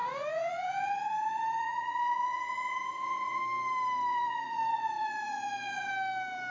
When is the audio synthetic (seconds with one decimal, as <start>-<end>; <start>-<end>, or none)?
0.0-3.4; 4.1-5.9